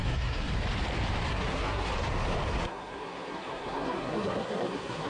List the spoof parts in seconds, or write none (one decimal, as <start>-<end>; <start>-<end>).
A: 0.0-0.5; 1.3-1.9; 2.6-5.1